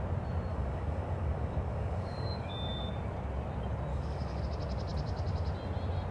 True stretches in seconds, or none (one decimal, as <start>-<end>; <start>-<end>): 0.0-0.5; 2.9-3.9; 4.4-6.1